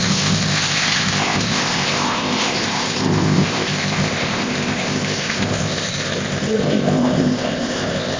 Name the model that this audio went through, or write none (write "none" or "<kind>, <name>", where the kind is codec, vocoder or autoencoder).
codec, ZipCodec